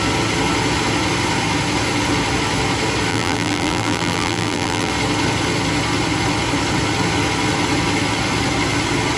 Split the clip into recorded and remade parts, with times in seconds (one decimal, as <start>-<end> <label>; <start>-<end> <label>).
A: 0.0-3.1 recorded; 3.1-4.9 remade; 4.9-9.2 recorded